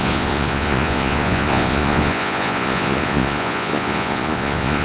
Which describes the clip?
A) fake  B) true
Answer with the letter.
A